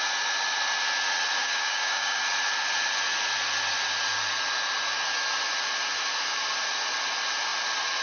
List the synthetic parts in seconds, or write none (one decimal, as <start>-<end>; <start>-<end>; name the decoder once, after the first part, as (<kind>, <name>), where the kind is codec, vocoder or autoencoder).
1.4-2.2 (codec, DAC)